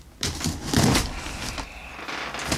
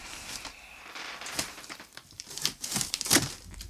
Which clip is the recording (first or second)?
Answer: first